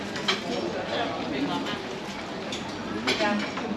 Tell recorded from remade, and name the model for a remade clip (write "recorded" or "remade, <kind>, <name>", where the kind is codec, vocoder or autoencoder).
recorded